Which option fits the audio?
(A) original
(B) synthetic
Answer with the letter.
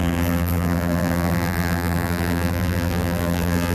B